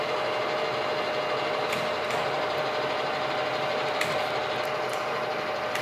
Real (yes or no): yes